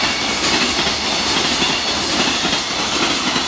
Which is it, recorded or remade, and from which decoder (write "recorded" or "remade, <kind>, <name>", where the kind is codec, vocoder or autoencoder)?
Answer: recorded